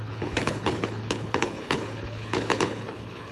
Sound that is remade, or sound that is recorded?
remade